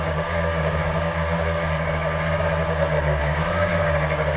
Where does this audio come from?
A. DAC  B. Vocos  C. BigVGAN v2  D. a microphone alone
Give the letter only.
A